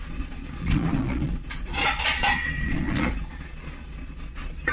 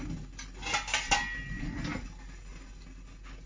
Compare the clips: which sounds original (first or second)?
second